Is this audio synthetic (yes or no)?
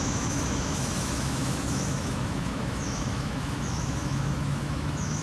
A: yes